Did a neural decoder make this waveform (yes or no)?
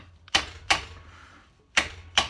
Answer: yes